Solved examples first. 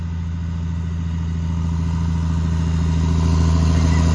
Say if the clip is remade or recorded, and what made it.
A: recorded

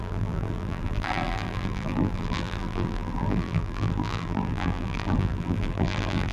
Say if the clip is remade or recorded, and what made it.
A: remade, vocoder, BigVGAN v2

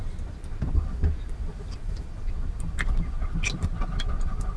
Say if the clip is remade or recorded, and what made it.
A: recorded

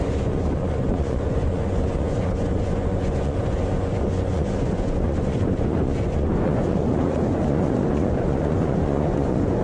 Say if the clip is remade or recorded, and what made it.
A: remade, vocoder, Vocos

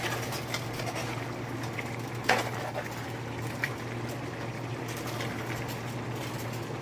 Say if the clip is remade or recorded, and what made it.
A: remade, vocoder, BigVGAN v2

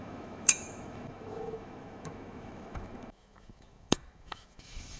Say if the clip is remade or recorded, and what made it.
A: remade, autoencoder, DAC-VAE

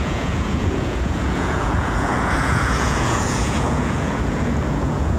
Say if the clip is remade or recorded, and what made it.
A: remade, vocoder, Vocos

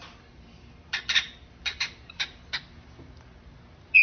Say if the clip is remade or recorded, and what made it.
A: recorded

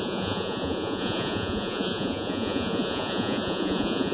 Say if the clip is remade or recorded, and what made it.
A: remade, vocoder, Vocos